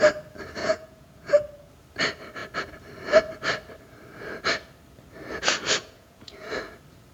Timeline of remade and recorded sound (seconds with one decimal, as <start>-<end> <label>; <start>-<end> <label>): 0.0-0.6 recorded; 0.6-1.7 remade; 1.7-5.8 recorded; 5.8-6.5 remade; 6.5-7.1 recorded